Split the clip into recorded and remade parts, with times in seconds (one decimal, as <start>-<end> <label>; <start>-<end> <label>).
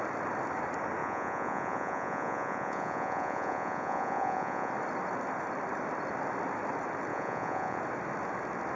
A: 0.0-1.0 recorded; 1.0-4.7 remade; 4.7-7.1 recorded; 7.1-7.8 remade; 7.8-8.8 recorded